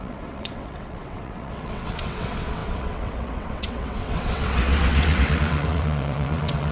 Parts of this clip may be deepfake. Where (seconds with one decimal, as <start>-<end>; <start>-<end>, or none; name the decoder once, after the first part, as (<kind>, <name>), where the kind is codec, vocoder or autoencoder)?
0.0-6.7 (vocoder, WaveNeXt)